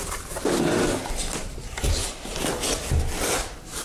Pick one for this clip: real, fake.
real